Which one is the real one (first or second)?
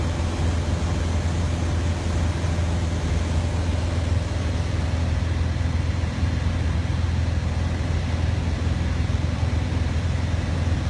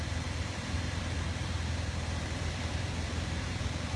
first